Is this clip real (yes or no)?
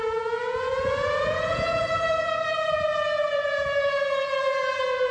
no